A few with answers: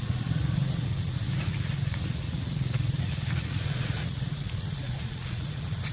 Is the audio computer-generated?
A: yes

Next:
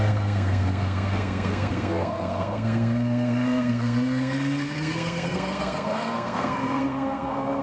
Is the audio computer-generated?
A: yes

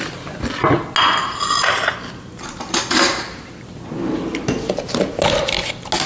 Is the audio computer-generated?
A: no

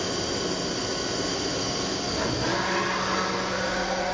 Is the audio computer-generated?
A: no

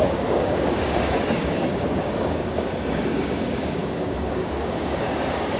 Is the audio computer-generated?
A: yes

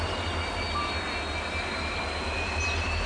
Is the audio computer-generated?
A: no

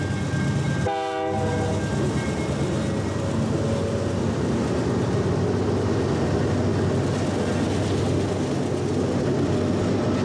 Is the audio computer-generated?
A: no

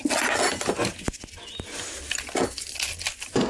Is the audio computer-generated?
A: no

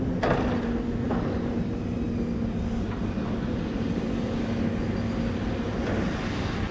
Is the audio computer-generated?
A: no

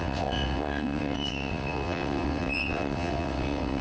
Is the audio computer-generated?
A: yes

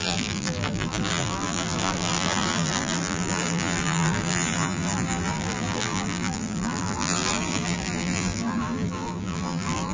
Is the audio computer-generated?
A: yes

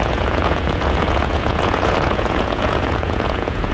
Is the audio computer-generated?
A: yes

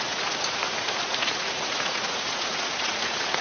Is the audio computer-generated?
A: yes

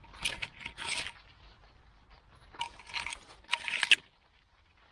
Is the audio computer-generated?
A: no